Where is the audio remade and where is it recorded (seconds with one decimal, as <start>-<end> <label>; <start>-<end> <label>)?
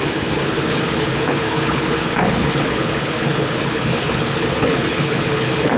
0.0-5.8 remade